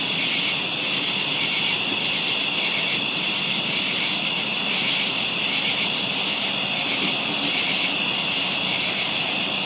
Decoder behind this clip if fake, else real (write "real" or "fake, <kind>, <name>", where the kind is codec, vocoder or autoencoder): real